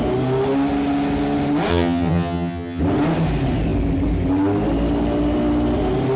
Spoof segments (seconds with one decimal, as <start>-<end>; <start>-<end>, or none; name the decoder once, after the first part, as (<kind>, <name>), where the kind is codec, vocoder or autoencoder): 1.7-2.8 (vocoder, HiFi-GAN)